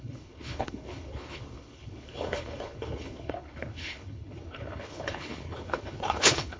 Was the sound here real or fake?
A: fake